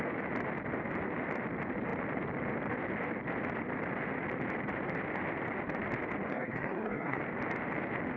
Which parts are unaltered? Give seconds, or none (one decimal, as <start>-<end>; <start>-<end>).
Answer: 0.0-6.3; 7.2-8.2